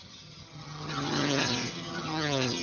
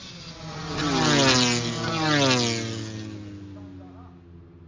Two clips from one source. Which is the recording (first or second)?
second